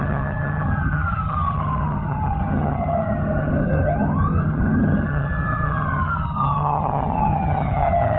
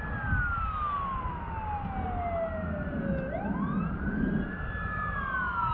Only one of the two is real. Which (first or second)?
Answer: second